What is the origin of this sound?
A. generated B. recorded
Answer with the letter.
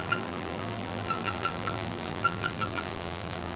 A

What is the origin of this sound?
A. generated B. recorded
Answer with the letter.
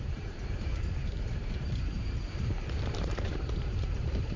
A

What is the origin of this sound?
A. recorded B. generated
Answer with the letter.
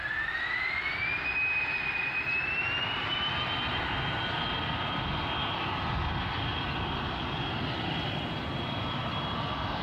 A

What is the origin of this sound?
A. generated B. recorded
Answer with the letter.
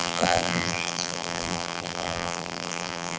A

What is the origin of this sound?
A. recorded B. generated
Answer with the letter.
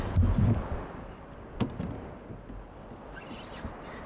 A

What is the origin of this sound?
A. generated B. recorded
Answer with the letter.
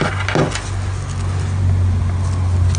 B